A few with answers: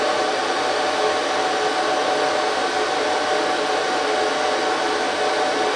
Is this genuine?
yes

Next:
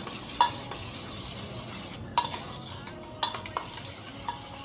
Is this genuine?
yes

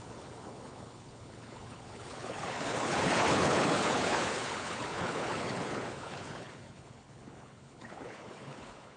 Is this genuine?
no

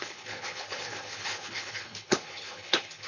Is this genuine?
no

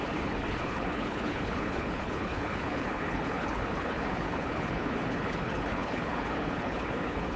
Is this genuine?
no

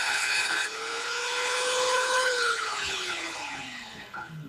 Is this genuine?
no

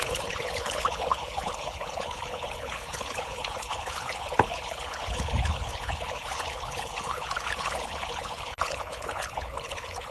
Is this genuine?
no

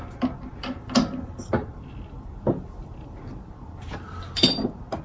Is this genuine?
yes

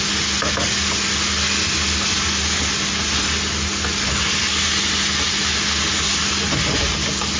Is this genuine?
yes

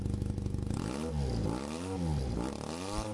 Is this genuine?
yes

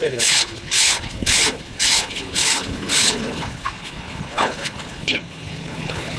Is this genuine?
no